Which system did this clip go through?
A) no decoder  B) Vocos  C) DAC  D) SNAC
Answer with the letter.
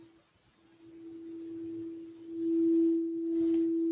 A